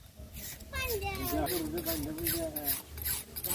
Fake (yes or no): no